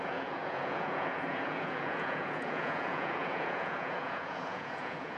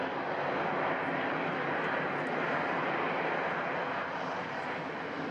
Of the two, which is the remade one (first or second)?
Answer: first